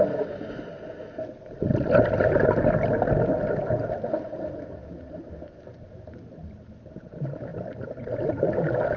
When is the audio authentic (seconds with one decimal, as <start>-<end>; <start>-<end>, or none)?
0.0-9.0